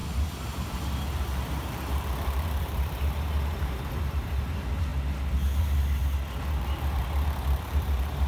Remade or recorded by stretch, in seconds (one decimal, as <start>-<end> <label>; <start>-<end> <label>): 0.0-4.9 remade; 4.9-5.6 recorded; 5.6-6.0 remade; 6.0-6.6 recorded; 6.6-8.3 remade